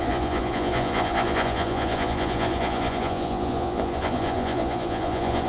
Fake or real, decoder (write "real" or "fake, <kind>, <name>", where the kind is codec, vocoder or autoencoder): fake, vocoder, Vocos